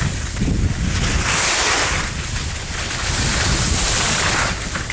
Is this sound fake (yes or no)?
no